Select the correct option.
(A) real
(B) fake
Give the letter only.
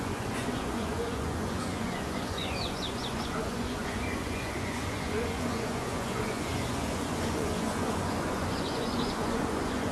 B